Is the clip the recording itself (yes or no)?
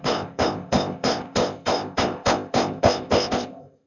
no